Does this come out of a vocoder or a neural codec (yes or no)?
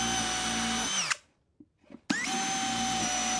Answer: no